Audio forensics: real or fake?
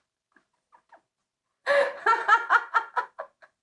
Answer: fake